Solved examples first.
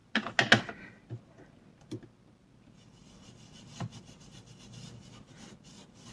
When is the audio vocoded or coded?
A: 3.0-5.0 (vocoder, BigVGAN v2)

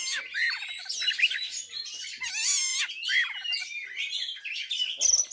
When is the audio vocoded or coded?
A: none

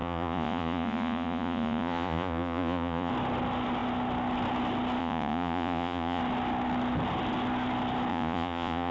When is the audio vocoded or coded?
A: 0.0-3.1 (vocoder, Vocos); 5.0-6.2; 8.1-8.9